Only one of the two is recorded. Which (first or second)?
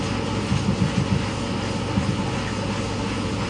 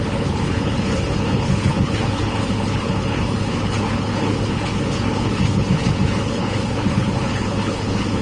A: first